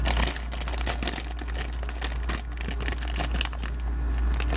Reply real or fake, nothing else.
real